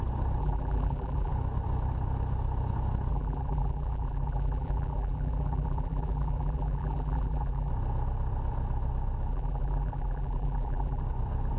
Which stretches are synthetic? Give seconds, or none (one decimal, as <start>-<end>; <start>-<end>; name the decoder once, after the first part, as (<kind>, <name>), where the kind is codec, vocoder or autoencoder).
0.4-1.3 (vocoder, BigVGAN v2); 3.1-7.7; 9.3-11.0